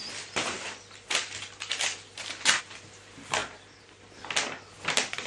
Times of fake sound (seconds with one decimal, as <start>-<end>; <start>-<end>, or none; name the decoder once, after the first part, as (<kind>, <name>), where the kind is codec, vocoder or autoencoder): none